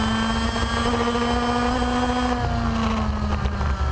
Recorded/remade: recorded